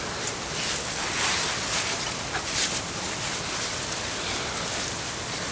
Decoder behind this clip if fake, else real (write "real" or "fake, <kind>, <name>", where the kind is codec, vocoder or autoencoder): real